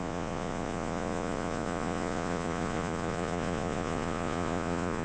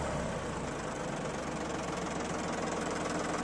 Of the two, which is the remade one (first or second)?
first